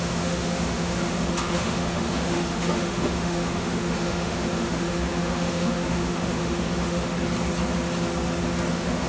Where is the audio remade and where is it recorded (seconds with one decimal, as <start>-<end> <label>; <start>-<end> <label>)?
0.0-7.0 remade; 7.0-8.7 recorded; 8.7-9.1 remade